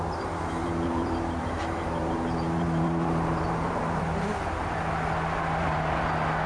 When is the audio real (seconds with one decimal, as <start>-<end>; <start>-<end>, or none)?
0.0-0.6; 4.0-5.6; 6.1-6.5